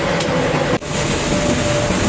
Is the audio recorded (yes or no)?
yes